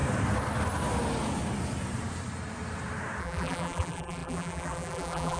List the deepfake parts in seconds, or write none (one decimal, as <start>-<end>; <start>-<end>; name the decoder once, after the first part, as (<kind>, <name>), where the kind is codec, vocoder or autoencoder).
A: 3.2-5.4 (vocoder, BigVGAN v2)